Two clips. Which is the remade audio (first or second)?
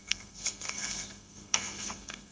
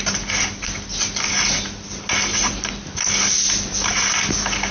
first